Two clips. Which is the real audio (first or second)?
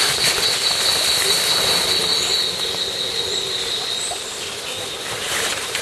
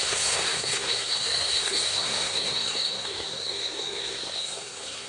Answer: first